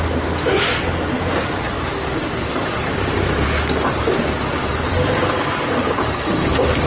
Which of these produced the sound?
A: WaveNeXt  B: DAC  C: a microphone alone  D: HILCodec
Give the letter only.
C